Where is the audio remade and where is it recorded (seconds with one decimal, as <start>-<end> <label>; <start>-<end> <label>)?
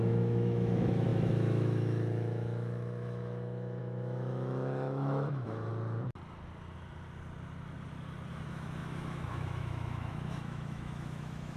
0.0-5.7 remade; 5.7-8.3 recorded; 8.3-11.6 remade